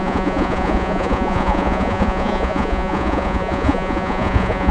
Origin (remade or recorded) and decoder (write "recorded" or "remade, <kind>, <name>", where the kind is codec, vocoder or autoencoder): remade, vocoder, Vocos